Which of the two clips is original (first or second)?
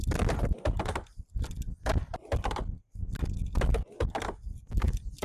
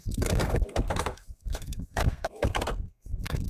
first